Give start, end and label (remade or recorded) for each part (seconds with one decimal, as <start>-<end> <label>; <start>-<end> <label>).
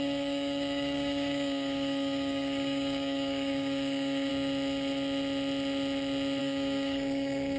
0.0-4.3 remade; 4.3-6.4 recorded; 6.4-7.6 remade